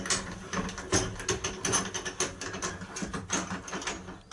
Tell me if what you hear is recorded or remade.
recorded